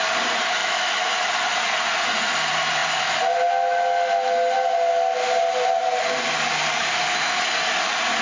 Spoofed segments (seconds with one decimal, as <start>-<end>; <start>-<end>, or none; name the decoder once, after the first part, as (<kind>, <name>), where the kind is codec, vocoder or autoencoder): 0.6-1.1 (autoencoder, DAC-VAE); 6.8-7.4